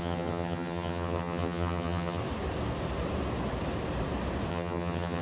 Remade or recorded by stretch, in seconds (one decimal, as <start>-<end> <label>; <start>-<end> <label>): 0.0-2.2 remade; 2.2-4.5 recorded; 4.5-5.2 remade